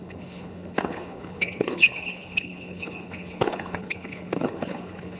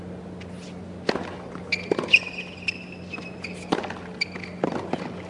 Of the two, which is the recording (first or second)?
second